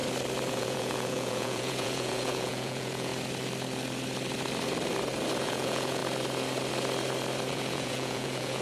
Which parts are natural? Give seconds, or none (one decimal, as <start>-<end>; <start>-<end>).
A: 0.0-0.5; 3.1-5.4; 6.0-7.5